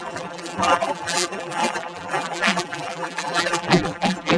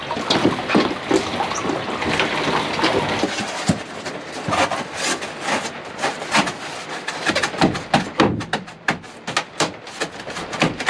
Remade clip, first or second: first